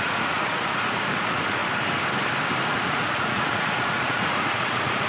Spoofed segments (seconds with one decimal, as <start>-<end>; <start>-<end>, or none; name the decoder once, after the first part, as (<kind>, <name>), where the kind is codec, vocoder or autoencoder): 0.0-1.6 (vocoder, Vocos); 2.7-5.1